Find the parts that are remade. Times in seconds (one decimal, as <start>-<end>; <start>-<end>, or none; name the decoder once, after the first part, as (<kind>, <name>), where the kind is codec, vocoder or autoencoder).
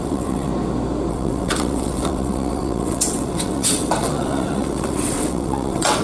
0.0-0.5 (vocoder, WaveNeXt); 1.1-6.0